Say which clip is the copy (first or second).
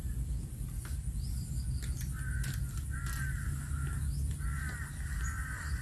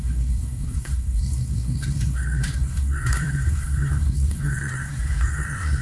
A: second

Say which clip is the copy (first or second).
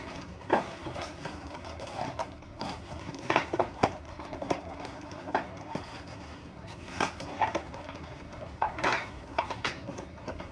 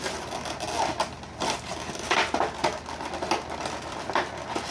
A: first